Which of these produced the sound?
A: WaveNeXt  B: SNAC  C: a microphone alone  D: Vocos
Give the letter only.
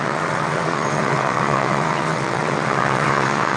A